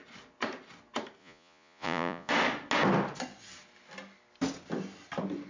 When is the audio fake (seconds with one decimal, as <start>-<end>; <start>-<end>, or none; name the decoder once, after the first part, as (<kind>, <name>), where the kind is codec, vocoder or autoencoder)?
1.2-2.3 (vocoder, Vocos)